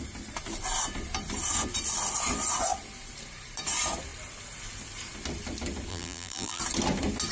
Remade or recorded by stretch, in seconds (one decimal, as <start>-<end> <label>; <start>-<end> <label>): 0.0-5.9 recorded; 5.9-6.6 remade; 6.6-7.3 recorded

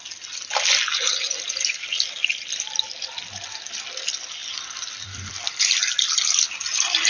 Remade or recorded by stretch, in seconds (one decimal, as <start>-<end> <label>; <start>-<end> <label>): 0.0-4.4 recorded; 4.4-5.6 remade; 5.6-7.1 recorded

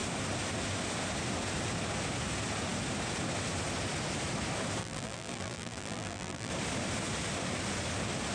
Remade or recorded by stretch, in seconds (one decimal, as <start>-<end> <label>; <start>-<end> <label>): 0.0-4.8 recorded; 4.8-6.5 remade; 6.5-8.3 recorded

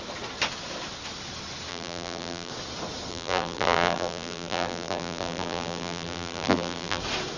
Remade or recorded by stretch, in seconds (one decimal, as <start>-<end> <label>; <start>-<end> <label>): 0.0-1.7 recorded; 1.7-2.5 remade; 2.5-3.1 recorded; 3.1-7.0 remade; 7.0-7.4 recorded

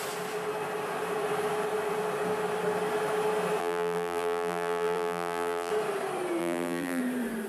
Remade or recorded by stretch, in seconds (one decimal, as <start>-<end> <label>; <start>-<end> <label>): 0.0-3.6 recorded; 3.6-5.7 remade; 5.7-6.4 recorded; 6.4-7.0 remade; 7.0-7.5 recorded

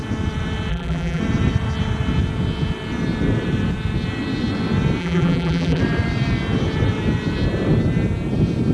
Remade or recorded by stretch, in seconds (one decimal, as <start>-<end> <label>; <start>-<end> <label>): 0.0-0.7 recorded; 0.7-1.2 remade; 1.2-5.0 recorded; 5.0-5.8 remade; 5.8-8.7 recorded

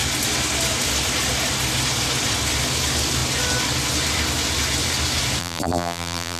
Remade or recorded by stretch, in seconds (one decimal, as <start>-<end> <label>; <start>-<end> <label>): 0.0-5.4 recorded; 5.4-6.4 remade